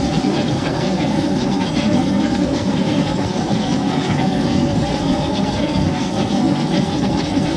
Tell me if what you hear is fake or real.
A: fake